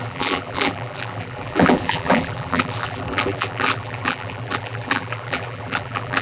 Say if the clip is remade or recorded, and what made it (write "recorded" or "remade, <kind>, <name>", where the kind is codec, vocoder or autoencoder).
remade, vocoder, BigVGAN v2